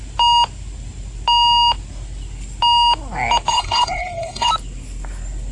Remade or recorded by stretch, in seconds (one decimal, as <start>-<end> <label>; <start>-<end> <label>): 0.0-3.5 recorded; 3.5-4.5 remade; 4.5-5.5 recorded